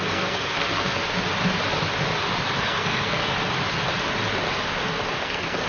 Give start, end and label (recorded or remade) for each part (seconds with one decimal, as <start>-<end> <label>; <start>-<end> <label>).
0.0-1.0 remade; 1.0-2.6 recorded; 2.6-3.2 remade; 3.2-5.2 recorded; 5.2-5.7 remade